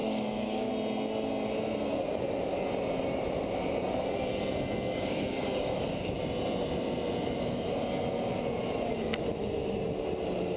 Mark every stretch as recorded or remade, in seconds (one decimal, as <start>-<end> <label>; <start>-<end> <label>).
0.0-0.7 remade; 0.7-4.9 recorded; 4.9-6.2 remade; 6.2-10.6 recorded